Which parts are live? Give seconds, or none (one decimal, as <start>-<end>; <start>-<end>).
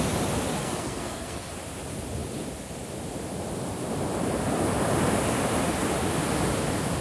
0.0-0.6; 1.5-7.0